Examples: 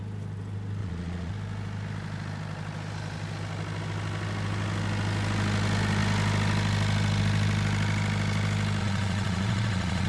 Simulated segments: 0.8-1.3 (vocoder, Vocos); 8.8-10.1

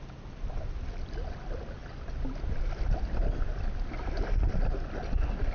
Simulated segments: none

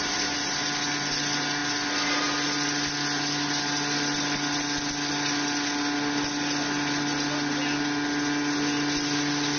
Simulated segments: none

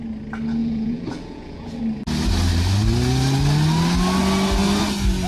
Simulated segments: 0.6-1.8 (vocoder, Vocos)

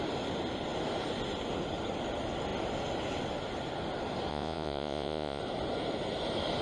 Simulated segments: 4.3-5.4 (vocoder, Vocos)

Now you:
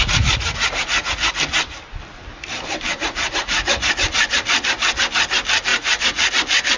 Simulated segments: 0.0-1.3 (vocoder, Vocos); 2.9-3.9; 5.7-6.3

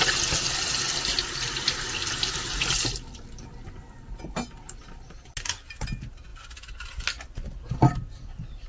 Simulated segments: none

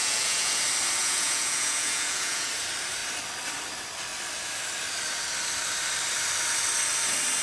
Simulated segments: 0.0-0.6 (vocoder, Vocos); 1.0-2.5